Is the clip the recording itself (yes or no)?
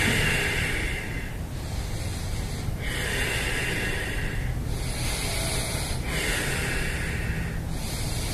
yes